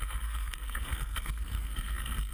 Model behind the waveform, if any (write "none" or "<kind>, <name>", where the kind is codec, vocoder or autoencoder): codec, SNAC